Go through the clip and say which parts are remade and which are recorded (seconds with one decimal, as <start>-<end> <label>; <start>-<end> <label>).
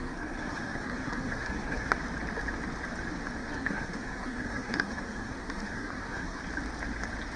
0.0-1.9 remade; 1.9-3.4 recorded; 3.4-6.4 remade; 6.4-7.4 recorded